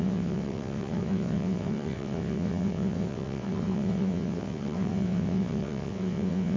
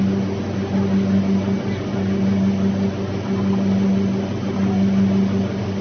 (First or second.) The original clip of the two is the second